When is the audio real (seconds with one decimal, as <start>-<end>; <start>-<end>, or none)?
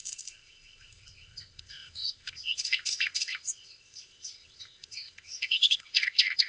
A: none